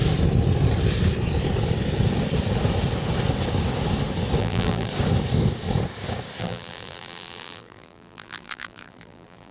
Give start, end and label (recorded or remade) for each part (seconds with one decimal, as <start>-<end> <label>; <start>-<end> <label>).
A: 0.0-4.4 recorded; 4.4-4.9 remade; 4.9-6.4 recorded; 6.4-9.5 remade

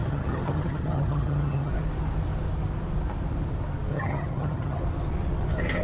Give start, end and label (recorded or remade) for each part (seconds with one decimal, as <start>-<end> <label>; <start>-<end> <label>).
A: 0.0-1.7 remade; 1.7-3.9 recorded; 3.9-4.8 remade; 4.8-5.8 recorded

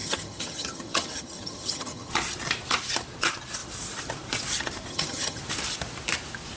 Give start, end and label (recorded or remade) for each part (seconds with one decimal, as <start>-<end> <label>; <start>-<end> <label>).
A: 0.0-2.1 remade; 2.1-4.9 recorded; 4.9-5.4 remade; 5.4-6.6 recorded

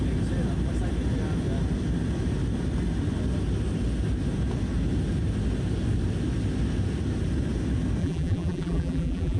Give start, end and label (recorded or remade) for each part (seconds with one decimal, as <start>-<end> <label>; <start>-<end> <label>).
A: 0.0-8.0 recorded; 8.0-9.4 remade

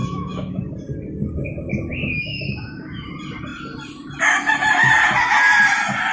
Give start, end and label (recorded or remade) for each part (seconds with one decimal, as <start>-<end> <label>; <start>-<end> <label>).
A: 0.0-0.6 remade; 0.6-1.9 recorded; 1.9-3.1 remade; 3.1-6.1 recorded